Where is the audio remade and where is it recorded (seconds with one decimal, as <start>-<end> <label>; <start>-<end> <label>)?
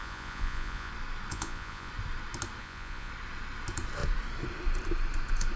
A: 0.0-0.9 remade; 0.9-1.3 recorded; 1.3-1.9 remade; 1.9-2.6 recorded; 2.6-3.1 remade; 3.1-5.6 recorded